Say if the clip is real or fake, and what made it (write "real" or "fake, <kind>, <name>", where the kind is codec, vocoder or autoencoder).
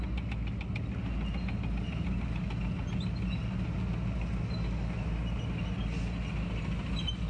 real